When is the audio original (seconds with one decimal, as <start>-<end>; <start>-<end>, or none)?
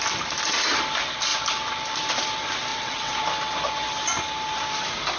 0.0-2.7; 3.2-5.2